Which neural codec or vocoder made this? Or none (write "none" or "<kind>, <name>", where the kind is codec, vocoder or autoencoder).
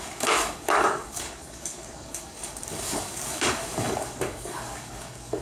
codec, DAC